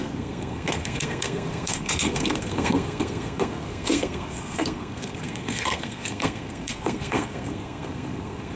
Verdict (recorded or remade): remade